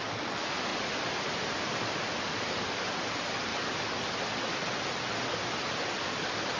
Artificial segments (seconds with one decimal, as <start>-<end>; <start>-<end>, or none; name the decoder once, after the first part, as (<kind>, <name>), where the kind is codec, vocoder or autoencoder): 0.7-2.5 (vocoder, BigVGAN v2)

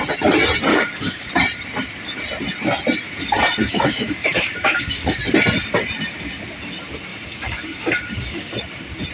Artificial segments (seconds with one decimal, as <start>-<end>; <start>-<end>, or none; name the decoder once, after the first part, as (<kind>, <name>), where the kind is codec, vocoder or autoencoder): 0.7-1.3 (codec, DAC); 3.6-5.2; 7.1-8.5